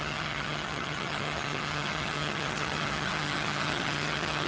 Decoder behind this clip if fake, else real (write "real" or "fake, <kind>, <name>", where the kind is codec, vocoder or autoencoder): fake, vocoder, HiFi-GAN